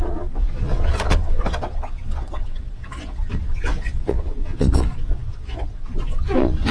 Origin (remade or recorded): remade